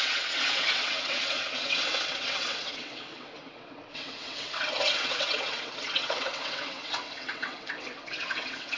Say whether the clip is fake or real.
fake